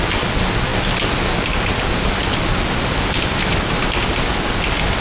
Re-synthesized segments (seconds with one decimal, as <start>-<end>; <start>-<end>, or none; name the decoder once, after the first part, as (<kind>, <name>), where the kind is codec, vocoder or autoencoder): none